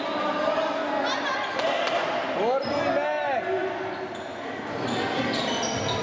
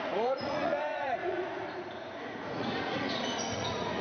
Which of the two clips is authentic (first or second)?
first